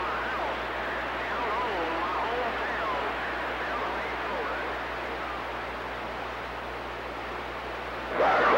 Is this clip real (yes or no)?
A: yes